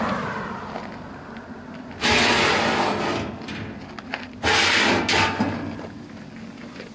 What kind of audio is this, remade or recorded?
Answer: recorded